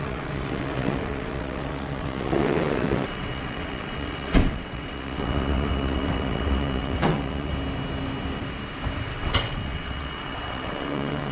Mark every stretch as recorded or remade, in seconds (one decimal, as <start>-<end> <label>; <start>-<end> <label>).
0.0-7.5 remade; 7.5-9.1 recorded; 9.1-11.3 remade